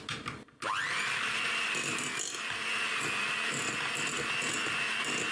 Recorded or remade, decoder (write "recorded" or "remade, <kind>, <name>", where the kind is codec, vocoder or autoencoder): recorded